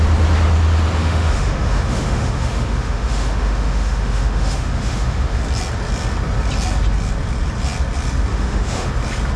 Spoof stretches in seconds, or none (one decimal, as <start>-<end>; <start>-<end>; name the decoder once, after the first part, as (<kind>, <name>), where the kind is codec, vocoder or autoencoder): 1.0-5.4 (autoencoder, DAC-VAE); 8.3-8.9